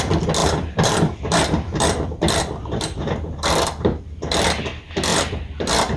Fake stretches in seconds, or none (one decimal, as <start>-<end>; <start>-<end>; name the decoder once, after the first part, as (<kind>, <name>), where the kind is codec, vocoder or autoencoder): 0.4-4.0 (vocoder, BigVGAN v2); 5.1-6.0